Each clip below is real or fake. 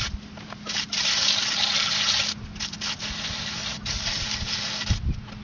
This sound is real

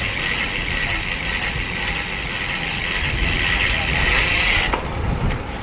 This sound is real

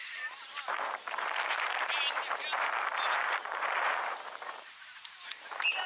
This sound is fake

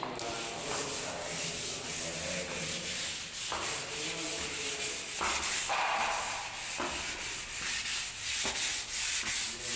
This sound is real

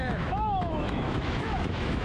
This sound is fake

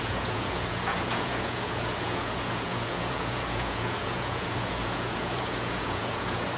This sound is fake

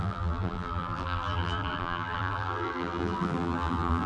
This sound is fake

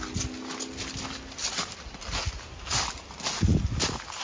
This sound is real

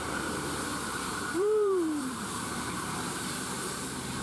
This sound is fake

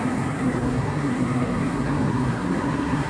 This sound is fake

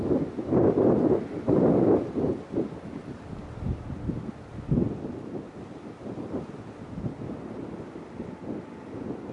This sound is real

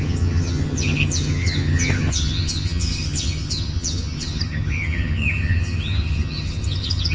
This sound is fake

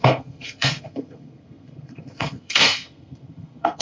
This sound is fake